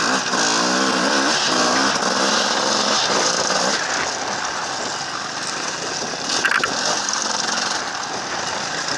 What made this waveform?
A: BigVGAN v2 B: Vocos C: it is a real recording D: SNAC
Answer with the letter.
C